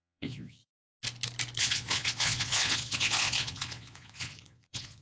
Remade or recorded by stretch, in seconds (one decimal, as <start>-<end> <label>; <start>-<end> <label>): 0.0-0.6 remade; 0.6-1.6 recorded; 1.6-5.0 remade

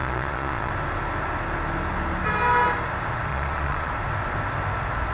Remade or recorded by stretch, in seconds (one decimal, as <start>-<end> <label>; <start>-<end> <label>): 0.0-0.7 remade; 0.7-3.3 recorded; 3.3-3.9 remade; 3.9-5.1 recorded